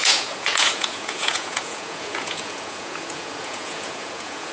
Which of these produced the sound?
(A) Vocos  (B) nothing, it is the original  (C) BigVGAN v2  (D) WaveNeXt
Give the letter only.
A